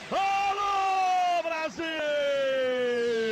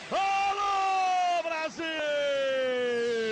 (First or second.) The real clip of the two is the second